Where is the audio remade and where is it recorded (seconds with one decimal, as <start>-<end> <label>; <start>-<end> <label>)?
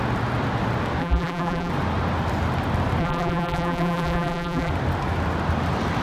0.0-1.0 recorded; 1.0-1.7 remade; 1.7-3.0 recorded; 3.0-4.7 remade; 4.7-6.0 recorded